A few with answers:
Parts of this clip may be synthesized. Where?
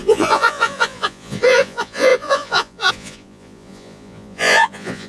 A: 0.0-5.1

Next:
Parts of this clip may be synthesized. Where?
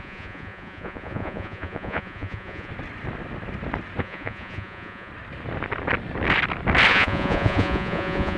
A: 0.0-2.7; 4.0-5.1; 6.9-8.4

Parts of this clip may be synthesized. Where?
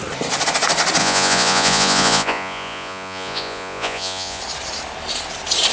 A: 1.0-4.4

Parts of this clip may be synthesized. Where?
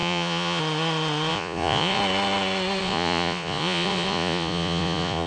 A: 0.0-0.6; 1.3-2.0; 2.8-5.3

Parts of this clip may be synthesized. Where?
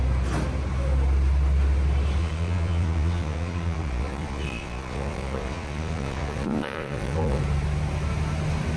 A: 2.2-7.4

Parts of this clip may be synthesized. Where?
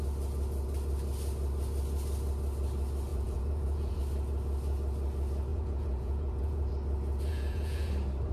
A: 3.1-4.0; 5.5-6.7; 7.3-7.9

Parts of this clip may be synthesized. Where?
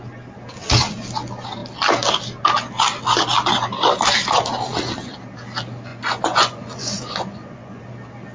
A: 5.9-7.8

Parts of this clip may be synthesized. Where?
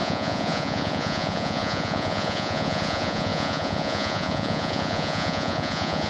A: 0.0-6.1